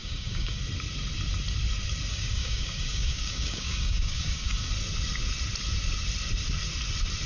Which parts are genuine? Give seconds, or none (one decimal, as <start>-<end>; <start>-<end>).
0.6-2.1; 4.7-7.3